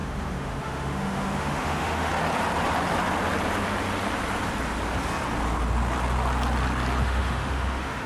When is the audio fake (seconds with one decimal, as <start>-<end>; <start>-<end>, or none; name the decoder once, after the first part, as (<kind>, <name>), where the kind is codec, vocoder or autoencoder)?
0.0-2.1 (autoencoder, DAC-VAE); 7.0-8.1